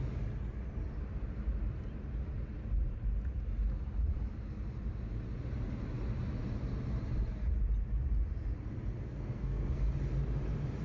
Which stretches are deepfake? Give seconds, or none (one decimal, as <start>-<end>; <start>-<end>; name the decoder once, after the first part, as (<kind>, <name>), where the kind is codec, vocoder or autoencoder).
9.0-9.9 (codec, SNAC)